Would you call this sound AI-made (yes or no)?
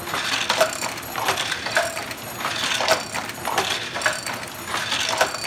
no